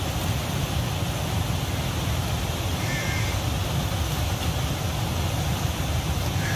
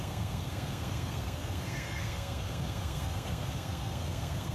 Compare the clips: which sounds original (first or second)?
first